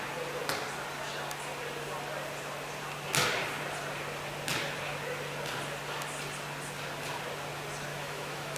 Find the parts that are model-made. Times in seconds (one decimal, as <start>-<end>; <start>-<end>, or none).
7.9-8.6